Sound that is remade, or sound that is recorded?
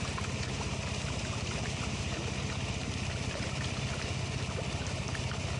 recorded